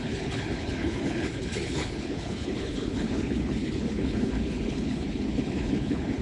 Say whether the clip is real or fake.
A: fake